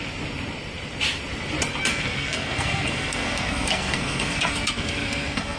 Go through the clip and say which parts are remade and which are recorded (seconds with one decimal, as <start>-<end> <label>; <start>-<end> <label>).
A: 0.0-1.9 recorded; 1.9-5.6 remade